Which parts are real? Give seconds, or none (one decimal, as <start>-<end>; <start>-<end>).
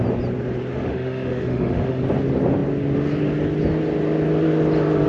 0.0-0.7; 2.0-5.1